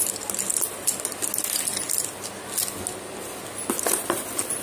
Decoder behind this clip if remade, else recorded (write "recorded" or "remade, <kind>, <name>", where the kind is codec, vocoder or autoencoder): recorded